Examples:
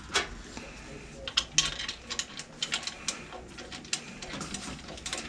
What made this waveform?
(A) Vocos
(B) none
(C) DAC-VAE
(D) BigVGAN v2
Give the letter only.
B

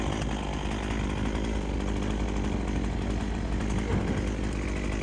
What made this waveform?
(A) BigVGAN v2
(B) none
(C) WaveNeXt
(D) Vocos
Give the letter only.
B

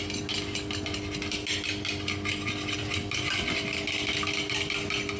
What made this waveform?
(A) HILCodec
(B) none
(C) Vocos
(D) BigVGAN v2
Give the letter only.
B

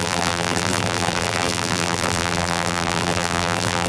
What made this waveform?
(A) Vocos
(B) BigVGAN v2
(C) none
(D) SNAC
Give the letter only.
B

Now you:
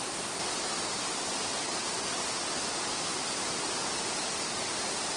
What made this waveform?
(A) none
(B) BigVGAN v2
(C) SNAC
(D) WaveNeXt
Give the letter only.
B